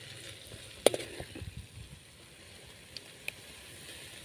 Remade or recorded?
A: recorded